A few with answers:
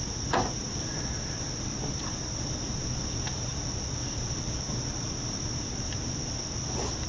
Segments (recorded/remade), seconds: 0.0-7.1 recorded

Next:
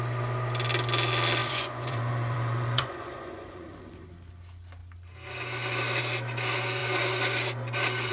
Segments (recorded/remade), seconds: 0.0-1.4 recorded; 1.4-4.0 remade; 4.0-8.1 recorded

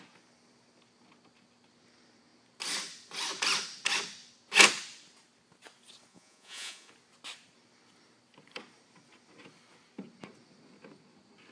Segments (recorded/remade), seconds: 0.0-6.1 recorded; 6.1-6.9 remade; 6.9-11.5 recorded